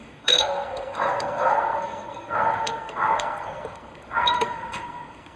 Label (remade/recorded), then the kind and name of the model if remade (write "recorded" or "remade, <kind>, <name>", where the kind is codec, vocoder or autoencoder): remade, codec, SNAC